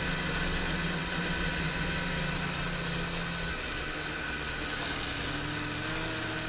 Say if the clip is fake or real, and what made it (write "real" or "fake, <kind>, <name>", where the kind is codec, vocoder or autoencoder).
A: real